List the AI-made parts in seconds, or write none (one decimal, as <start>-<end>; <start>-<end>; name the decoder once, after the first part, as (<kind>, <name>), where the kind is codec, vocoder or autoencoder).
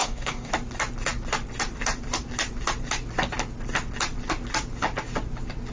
0.0-0.5 (codec, DAC)